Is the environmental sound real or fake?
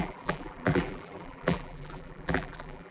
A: fake